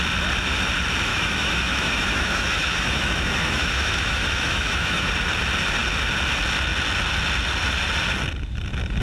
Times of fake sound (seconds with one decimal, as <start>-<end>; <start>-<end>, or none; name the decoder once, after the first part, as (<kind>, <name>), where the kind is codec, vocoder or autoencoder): 1.1-5.1 (autoencoder, DAC-VAE)